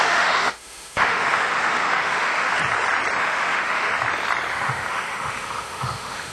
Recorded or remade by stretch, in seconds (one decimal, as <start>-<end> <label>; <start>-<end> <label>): 0.0-2.6 remade; 2.6-3.2 recorded; 3.2-3.9 remade; 3.9-4.5 recorded; 4.5-6.3 remade